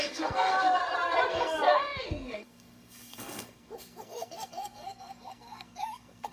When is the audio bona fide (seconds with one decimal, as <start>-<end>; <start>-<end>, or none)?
0.8-1.3